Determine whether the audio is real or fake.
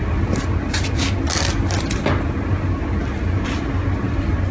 real